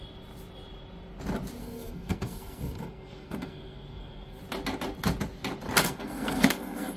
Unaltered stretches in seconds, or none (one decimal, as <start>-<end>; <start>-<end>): 0.0-1.6; 4.4-5.8